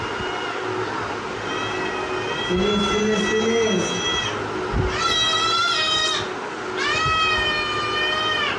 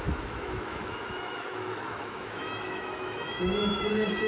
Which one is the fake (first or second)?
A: second